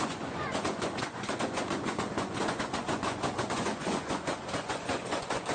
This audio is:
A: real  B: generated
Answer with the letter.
B